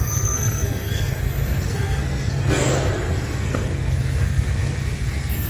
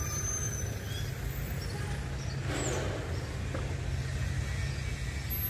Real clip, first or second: second